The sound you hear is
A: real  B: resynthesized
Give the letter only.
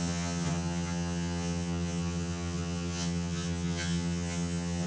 B